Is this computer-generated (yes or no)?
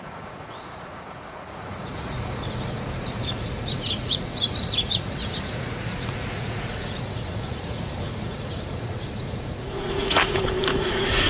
yes